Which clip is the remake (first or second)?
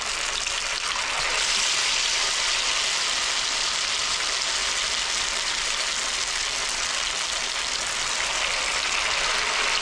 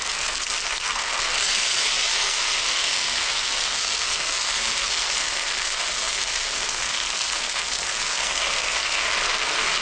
second